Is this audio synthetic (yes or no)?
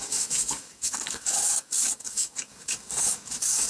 yes